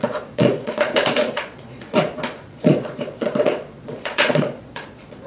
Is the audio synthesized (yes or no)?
yes